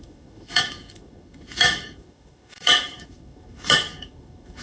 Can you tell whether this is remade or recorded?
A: remade